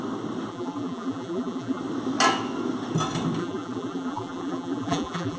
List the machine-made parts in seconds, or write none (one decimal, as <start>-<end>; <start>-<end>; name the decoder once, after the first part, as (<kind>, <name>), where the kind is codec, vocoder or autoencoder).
0.5-1.8 (vocoder, BigVGAN v2); 3.4-5.4